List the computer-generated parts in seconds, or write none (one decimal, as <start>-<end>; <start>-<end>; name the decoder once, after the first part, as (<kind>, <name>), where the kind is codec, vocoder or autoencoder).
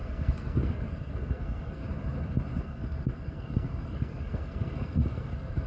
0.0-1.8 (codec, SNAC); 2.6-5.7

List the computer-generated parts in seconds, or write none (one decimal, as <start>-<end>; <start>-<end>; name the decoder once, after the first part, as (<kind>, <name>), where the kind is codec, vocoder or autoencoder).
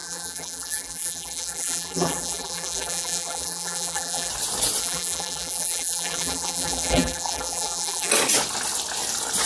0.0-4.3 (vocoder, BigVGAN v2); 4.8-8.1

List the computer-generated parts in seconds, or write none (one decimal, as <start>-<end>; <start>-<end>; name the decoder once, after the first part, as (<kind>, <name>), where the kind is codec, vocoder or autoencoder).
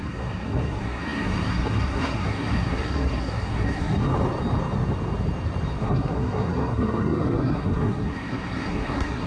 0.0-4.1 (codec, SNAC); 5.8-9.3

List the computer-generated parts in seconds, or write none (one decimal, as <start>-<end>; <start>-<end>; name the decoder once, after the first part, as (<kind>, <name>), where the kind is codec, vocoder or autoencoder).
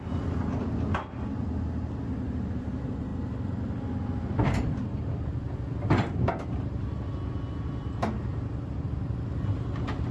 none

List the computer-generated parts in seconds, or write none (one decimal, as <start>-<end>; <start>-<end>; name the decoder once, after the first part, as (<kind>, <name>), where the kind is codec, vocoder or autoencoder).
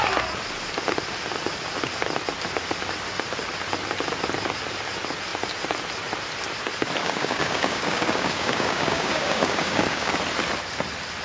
7.0-10.1 (codec, DAC)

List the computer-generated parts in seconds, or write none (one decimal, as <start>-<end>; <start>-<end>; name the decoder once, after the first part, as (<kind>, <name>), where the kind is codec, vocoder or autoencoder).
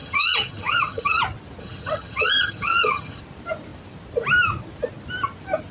0.0-1.2 (vocoder, HiFi-GAN); 1.6-3.2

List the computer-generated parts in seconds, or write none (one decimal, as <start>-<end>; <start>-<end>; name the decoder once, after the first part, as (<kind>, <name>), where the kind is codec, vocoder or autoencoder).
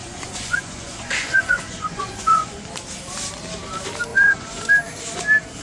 0.0-2.6 (vocoder, Vocos); 4.1-4.7